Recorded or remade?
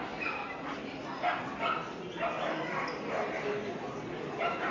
recorded